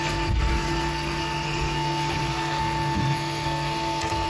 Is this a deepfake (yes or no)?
yes